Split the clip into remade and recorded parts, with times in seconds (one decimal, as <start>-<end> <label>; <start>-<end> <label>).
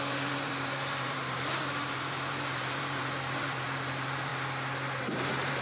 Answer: 0.0-4.3 remade; 4.3-5.0 recorded; 5.0-5.6 remade